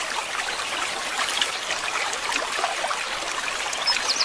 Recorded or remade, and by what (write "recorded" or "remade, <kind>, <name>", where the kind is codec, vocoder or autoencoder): recorded